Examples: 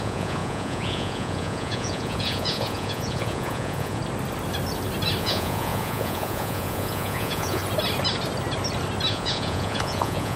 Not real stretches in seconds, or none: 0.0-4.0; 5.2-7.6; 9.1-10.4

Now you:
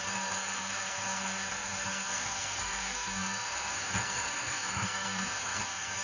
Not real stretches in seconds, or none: 0.0-6.0

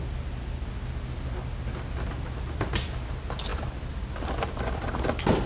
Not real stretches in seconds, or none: none

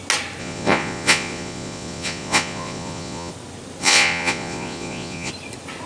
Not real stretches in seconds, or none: 0.4-3.3; 3.8-5.3